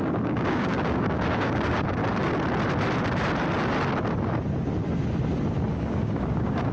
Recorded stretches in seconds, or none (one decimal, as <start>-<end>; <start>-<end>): 2.0-5.7